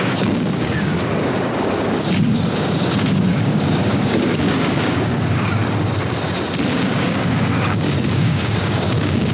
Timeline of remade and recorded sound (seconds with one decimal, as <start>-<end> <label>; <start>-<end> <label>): 0.0-5.6 remade; 5.6-6.7 recorded; 6.7-9.3 remade